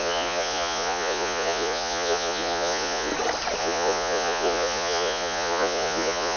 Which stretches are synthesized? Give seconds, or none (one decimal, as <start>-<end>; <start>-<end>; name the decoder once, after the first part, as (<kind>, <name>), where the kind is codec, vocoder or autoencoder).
0.0-3.1 (vocoder, Vocos); 3.6-6.4